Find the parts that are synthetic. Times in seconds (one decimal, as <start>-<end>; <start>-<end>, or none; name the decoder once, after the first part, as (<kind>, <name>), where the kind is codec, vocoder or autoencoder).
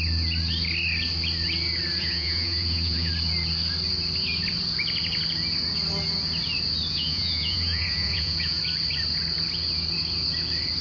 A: 2.0-3.1 (vocoder, Vocos); 6.9-8.6